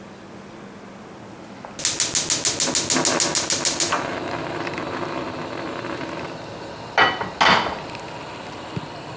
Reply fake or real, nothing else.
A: real